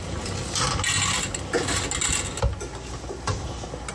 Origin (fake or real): real